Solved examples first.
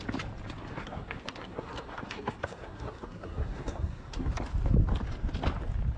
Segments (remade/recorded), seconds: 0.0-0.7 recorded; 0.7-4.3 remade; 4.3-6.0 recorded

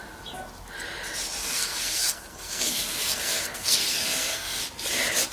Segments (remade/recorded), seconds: 0.0-1.4 recorded; 1.4-4.6 remade; 4.6-5.3 recorded